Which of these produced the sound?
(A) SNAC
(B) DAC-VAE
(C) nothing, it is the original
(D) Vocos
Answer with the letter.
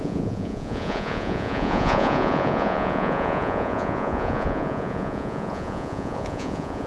D